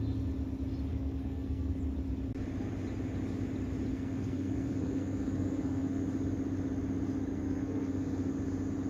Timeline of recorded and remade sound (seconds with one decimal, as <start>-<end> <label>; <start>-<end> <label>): 0.0-0.9 recorded; 0.9-1.8 remade; 1.8-3.9 recorded; 3.9-6.0 remade; 6.0-7.3 recorded; 7.3-8.3 remade; 8.3-8.9 recorded